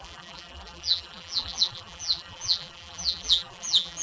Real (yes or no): no